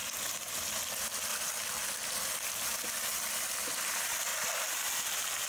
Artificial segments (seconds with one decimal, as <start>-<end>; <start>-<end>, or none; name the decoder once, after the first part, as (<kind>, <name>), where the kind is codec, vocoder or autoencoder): 0.0-0.7 (vocoder, BigVGAN v2); 1.3-2.9; 4.3-5.5

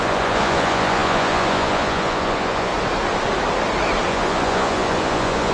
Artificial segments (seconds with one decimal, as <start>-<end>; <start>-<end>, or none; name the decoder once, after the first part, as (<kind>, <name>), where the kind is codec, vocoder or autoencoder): 0.0-2.7 (vocoder, Vocos); 4.1-5.5

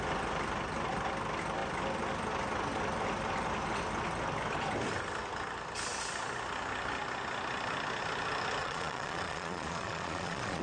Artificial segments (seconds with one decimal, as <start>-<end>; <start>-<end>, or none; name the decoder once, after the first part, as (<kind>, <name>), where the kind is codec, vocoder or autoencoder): 8.6-10.6 (vocoder, Vocos)

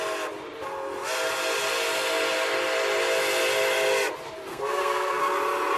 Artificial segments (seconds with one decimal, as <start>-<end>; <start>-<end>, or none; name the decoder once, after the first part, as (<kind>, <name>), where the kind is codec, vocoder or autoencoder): 4.5-5.2 (codec, SNAC)